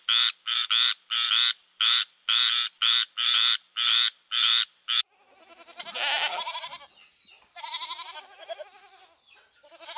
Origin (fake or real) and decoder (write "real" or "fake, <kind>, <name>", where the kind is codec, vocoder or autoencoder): real